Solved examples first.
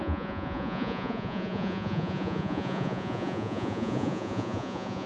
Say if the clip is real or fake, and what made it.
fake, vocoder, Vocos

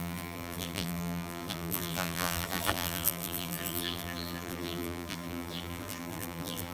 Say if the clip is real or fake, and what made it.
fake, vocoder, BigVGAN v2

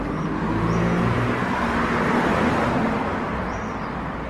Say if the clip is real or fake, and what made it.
real